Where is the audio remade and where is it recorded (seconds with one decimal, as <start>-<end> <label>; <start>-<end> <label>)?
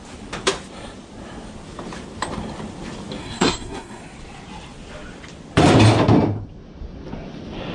0.0-3.2 recorded; 3.2-4.0 remade; 4.0-7.7 recorded